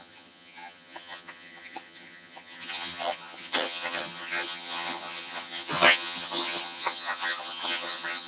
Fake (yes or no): yes